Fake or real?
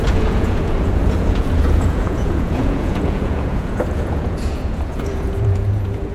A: fake